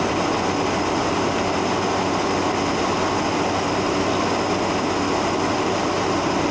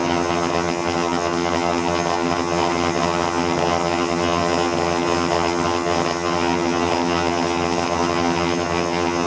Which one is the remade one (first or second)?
second